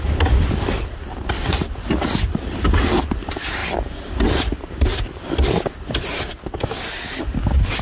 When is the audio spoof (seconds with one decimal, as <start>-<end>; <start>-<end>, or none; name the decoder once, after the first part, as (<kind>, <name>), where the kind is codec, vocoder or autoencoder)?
none